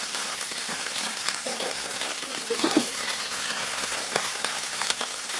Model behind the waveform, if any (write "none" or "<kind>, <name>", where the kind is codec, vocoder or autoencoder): codec, SNAC